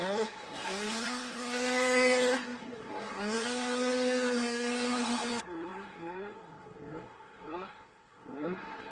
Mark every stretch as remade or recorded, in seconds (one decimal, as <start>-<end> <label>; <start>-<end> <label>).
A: 0.0-8.9 remade